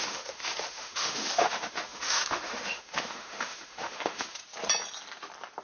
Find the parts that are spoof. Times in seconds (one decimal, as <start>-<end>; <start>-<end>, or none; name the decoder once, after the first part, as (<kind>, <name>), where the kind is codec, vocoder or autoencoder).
0.0-4.4 (autoencoder, DAC-VAE)